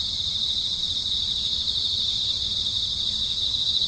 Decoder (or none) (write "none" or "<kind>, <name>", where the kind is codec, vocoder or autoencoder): none